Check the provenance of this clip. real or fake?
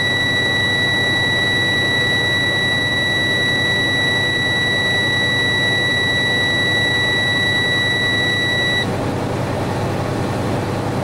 real